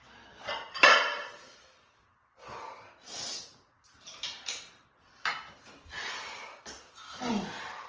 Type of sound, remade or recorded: recorded